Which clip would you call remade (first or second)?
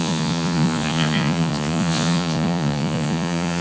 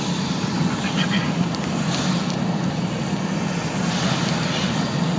first